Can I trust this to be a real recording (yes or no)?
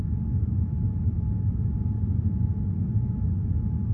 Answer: yes